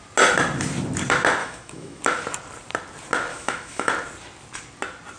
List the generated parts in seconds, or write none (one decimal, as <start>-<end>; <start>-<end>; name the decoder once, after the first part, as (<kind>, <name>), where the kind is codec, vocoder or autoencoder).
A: 1.4-2.0 (autoencoder, DAC-VAE); 3.3-3.9